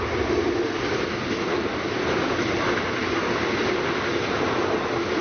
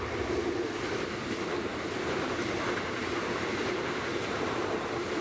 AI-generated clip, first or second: second